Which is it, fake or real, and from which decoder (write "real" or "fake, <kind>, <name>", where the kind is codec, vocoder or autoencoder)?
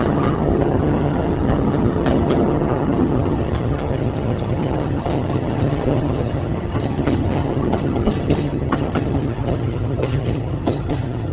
fake, vocoder, HiFi-GAN